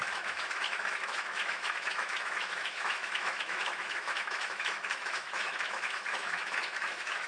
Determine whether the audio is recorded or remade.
remade